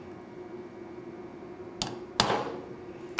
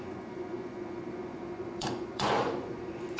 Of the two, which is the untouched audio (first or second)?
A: first